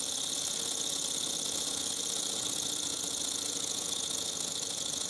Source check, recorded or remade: remade